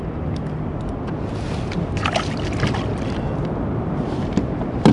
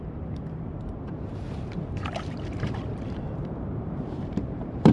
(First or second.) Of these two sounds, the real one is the first